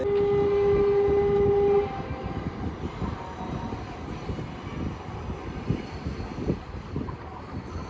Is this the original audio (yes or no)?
yes